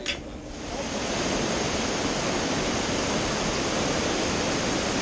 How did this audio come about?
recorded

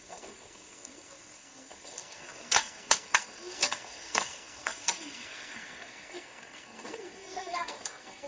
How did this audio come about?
remade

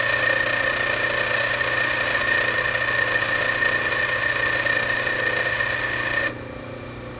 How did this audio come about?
recorded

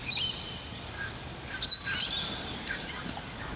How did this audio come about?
recorded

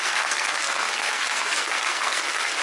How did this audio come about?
remade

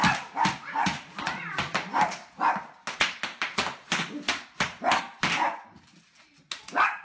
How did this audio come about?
recorded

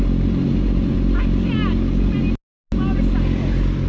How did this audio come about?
recorded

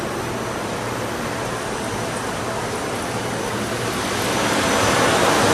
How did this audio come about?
recorded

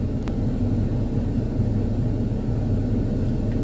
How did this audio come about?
recorded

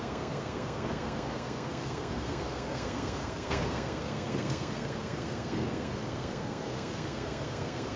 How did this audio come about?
remade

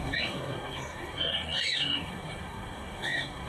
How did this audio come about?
remade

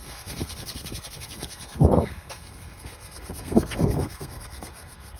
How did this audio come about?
remade